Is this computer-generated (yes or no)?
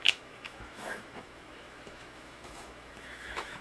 yes